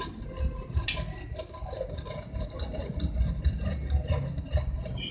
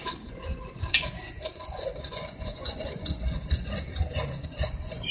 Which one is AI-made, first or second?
second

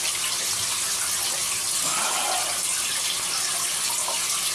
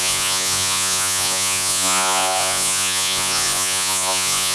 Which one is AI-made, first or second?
second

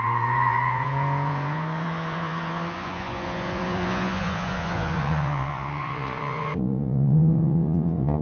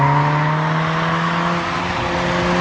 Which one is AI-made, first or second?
first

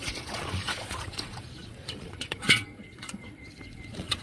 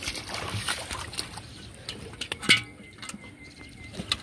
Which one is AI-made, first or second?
first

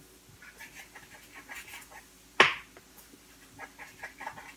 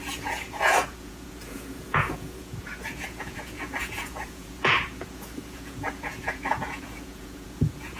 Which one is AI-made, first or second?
second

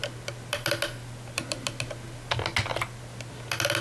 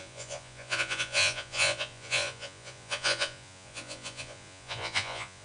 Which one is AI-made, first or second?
second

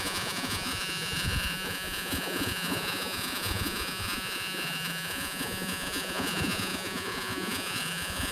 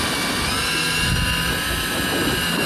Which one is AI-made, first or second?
first